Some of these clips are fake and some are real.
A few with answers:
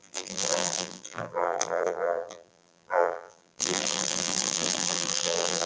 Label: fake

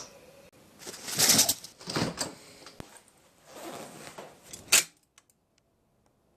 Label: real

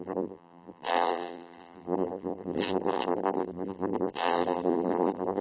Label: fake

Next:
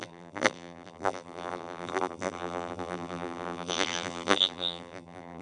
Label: fake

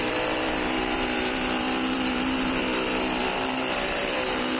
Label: fake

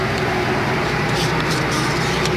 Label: fake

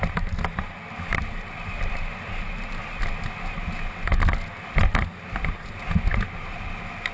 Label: real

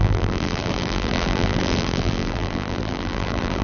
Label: fake